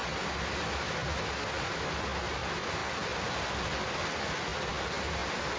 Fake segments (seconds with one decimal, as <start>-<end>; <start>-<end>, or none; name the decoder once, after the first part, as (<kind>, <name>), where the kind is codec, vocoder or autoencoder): none

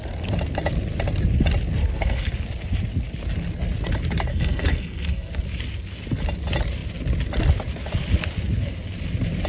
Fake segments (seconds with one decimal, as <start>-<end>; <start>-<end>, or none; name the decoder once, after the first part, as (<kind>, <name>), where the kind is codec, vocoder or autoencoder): 1.8-2.3 (codec, SNAC); 4.3-5.3

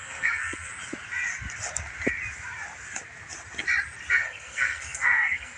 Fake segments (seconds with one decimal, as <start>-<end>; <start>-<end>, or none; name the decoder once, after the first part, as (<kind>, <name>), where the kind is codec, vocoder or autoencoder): 0.0-0.7 (codec, SNAC); 4.1-5.6

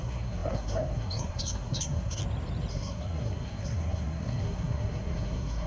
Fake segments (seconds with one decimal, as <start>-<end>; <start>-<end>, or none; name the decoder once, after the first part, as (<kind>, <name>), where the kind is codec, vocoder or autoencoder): 0.0-2.2 (codec, SNAC); 2.7-5.7

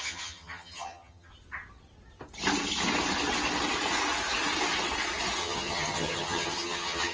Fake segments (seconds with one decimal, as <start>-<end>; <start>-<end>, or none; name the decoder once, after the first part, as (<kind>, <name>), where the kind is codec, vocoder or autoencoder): 0.0-1.3 (vocoder, HiFi-GAN); 5.4-7.1

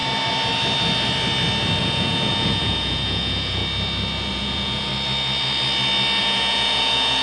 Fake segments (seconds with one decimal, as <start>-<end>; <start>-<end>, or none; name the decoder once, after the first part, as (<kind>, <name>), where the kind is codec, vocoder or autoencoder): 1.8-3.6 (vocoder, Vocos); 4.3-4.9; 6.2-7.2

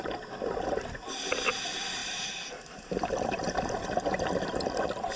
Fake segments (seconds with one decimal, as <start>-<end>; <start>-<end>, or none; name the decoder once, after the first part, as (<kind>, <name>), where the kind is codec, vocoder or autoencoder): none

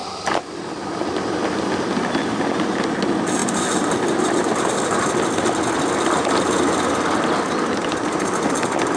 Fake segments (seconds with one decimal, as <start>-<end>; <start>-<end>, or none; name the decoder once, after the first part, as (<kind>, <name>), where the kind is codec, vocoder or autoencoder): none